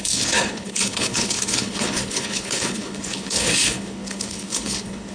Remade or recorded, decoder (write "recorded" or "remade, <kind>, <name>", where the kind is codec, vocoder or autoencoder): remade, codec, HILCodec